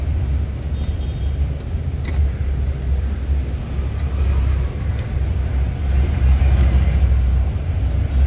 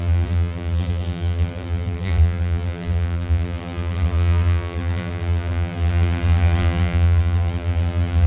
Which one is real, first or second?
first